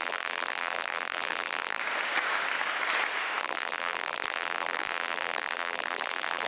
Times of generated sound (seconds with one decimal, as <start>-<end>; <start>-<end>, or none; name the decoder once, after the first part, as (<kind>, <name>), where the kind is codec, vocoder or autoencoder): 0.0-1.8 (vocoder, BigVGAN v2); 3.4-6.5